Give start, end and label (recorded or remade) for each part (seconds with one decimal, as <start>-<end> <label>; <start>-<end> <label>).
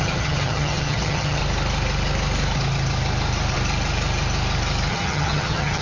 0.0-1.4 remade; 1.4-4.9 recorded; 4.9-5.8 remade